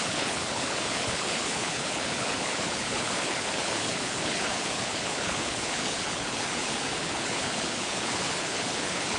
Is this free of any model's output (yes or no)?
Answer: no